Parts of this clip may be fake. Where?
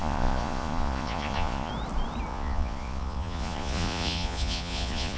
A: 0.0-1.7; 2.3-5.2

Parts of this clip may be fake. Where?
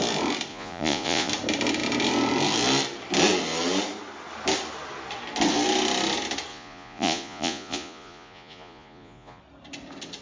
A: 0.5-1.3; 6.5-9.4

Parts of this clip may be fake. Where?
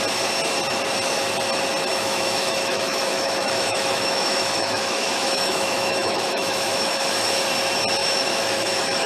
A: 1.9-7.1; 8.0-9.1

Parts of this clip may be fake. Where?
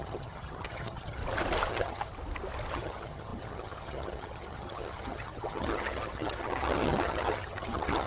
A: 0.0-1.2; 1.7-2.1; 2.7-8.1